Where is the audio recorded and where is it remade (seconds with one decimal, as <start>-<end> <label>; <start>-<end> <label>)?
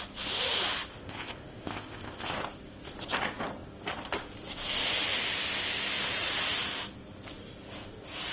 0.0-0.9 recorded; 0.9-2.3 remade; 2.3-8.3 recorded